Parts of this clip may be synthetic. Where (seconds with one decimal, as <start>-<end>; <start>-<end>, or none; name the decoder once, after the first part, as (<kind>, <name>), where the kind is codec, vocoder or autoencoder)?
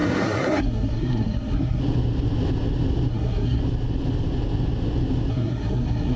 0.0-1.8 (codec, SNAC); 3.1-3.6; 5.3-6.2